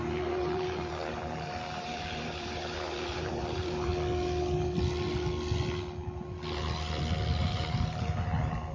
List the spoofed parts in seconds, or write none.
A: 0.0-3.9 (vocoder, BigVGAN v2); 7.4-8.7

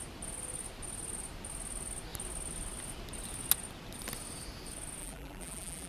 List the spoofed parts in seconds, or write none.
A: 5.0-5.9 (vocoder, BigVGAN v2)

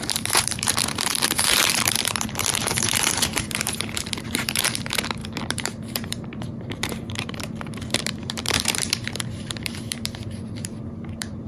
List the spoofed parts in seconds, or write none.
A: 0.0-11.5 (vocoder, BigVGAN v2)

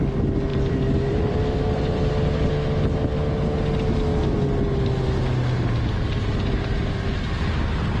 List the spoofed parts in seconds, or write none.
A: 0.5-2.5 (vocoder, BigVGAN v2)